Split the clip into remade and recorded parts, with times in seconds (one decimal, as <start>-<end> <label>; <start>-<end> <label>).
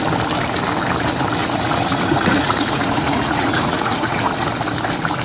0.0-1.4 recorded; 1.4-4.5 remade; 4.5-5.2 recorded